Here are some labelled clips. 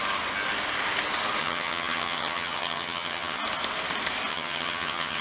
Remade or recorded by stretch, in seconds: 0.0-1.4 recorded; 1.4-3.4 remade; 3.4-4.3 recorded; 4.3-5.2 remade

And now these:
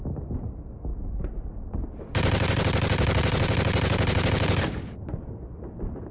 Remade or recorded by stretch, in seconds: 0.0-6.1 recorded

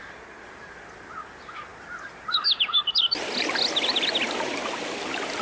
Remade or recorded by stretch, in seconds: 0.0-5.4 recorded

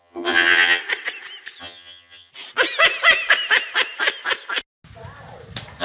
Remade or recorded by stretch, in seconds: 0.0-0.8 remade; 0.8-1.6 recorded; 1.6-2.3 remade; 2.3-5.8 recorded

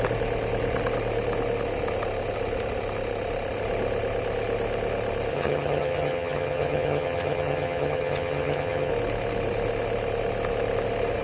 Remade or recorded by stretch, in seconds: 0.0-5.3 recorded; 5.3-8.9 remade; 8.9-11.2 recorded